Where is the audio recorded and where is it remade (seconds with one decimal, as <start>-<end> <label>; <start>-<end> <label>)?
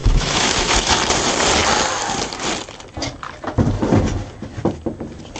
0.0-1.0 remade; 1.0-5.4 recorded